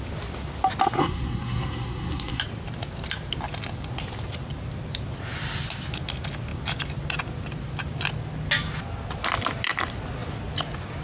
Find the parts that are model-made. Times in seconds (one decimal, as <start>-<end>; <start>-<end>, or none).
1.0-2.4